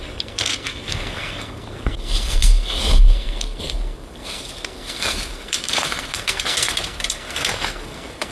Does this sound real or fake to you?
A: fake